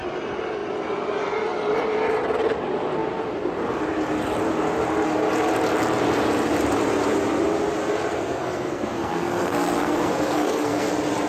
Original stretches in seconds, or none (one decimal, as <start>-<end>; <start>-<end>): 0.0-8.1; 10.9-11.3